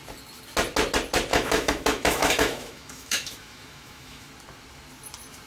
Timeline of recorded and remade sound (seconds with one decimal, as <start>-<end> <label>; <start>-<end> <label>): 0.0-1.3 recorded; 1.3-4.3 remade; 4.3-5.5 recorded